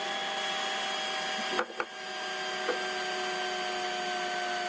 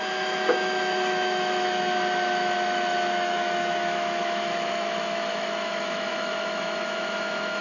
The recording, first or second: first